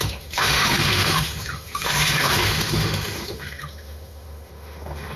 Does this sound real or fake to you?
fake